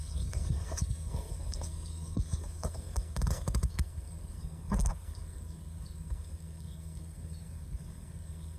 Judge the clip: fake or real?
fake